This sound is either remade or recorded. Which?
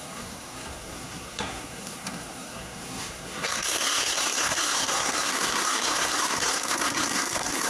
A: remade